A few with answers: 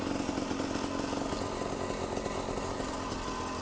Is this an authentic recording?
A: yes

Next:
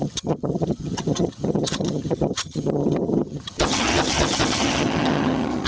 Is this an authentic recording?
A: no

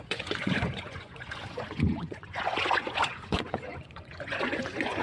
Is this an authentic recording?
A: no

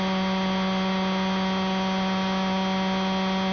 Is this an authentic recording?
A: yes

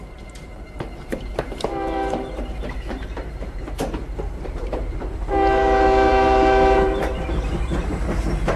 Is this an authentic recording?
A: no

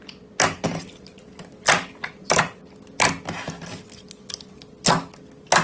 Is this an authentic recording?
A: yes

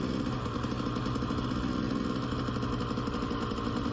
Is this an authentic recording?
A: yes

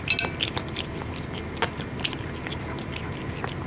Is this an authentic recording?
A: yes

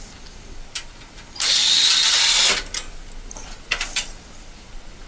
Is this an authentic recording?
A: yes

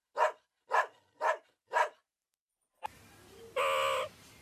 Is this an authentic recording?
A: yes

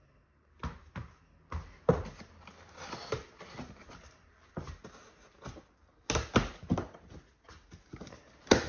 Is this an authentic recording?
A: yes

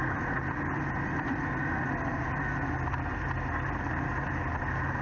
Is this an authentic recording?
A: yes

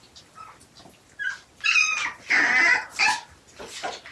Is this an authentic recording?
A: yes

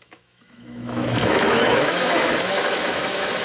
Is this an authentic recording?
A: no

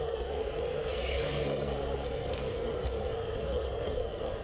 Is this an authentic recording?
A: no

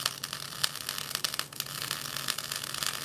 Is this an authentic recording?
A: yes